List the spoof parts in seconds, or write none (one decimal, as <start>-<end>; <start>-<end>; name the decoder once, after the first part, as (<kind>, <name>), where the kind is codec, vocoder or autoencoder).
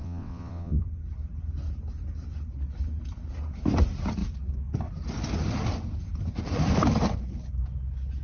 0.0-0.8 (vocoder, WaveNeXt)